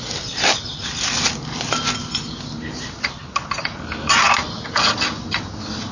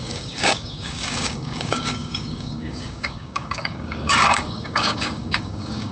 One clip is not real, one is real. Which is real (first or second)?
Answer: first